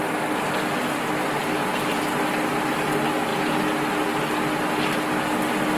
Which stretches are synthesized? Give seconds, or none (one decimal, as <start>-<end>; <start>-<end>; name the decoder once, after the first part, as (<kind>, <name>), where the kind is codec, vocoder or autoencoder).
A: 1.4-2.1 (vocoder, BigVGAN v2)